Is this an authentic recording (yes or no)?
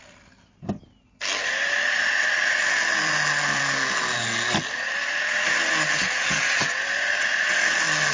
yes